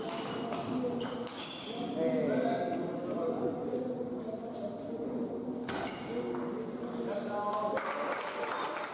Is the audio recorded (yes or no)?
yes